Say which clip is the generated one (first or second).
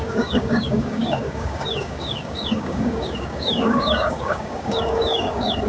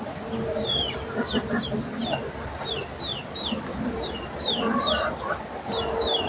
first